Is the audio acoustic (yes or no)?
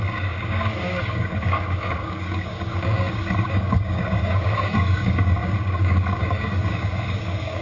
no